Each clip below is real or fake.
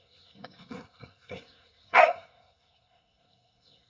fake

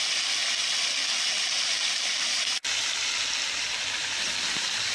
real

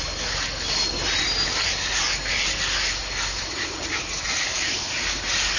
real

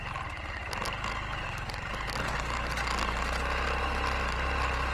real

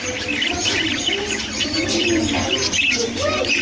real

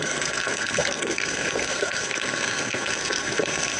fake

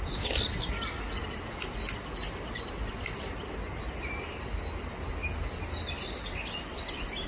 real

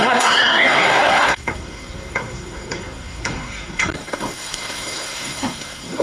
fake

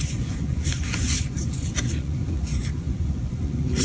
fake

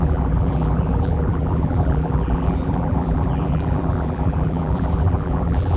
fake